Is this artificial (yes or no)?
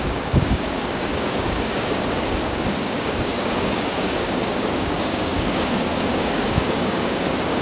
yes